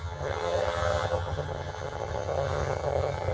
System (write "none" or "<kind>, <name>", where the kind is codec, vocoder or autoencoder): vocoder, HiFi-GAN